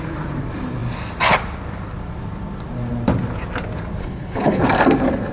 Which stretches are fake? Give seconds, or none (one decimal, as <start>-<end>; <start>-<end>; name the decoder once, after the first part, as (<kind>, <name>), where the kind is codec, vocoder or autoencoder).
4.0-4.6 (codec, HILCodec)